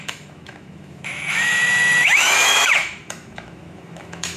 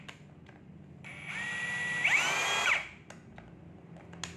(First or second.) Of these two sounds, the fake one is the first